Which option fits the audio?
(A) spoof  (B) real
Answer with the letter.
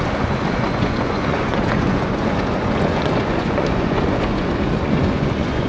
A